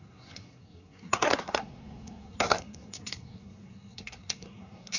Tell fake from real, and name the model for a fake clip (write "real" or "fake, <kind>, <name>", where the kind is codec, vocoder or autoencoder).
fake, codec, SNAC